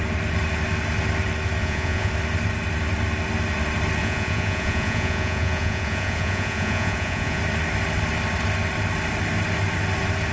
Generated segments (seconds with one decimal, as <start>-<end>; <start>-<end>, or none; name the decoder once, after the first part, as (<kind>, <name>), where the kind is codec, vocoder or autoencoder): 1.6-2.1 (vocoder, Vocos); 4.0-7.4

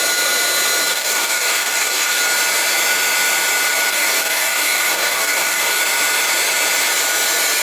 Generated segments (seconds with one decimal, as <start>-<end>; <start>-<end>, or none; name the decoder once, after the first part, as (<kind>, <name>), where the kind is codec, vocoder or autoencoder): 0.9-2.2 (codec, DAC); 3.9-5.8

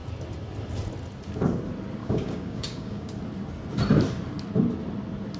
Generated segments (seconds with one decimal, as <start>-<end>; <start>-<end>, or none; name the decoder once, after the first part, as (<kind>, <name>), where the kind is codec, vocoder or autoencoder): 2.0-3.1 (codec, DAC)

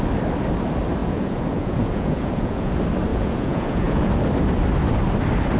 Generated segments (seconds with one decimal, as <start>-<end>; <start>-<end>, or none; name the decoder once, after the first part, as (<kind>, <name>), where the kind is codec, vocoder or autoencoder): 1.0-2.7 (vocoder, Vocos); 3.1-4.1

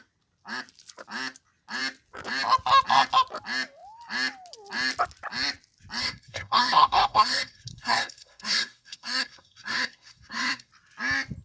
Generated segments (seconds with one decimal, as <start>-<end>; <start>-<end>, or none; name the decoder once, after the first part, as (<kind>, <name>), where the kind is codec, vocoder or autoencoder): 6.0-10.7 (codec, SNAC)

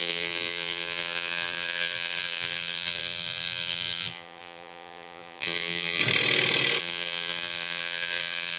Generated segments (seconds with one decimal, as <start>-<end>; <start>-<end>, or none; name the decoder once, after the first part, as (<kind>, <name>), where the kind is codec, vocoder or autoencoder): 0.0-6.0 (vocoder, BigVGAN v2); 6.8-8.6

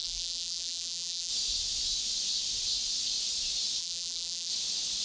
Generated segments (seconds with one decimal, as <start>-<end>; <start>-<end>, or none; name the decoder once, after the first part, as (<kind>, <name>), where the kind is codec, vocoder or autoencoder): 0.0-1.3 (vocoder, BigVGAN v2); 3.8-4.5

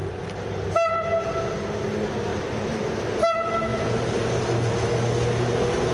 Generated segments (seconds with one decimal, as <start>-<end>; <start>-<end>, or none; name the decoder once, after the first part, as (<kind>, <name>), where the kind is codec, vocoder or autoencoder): 0.0-0.5 (vocoder, BigVGAN v2); 2.3-2.8; 3.7-4.7